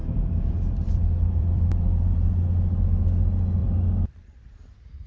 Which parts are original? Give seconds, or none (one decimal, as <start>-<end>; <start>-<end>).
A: 2.3-3.6